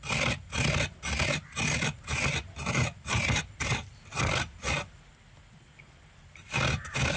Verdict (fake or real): real